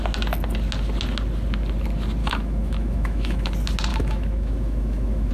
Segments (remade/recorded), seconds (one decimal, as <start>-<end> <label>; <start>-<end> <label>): 0.0-2.2 recorded; 2.2-3.5 remade; 3.5-3.9 recorded; 3.9-5.3 remade